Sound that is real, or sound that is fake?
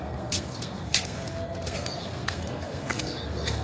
fake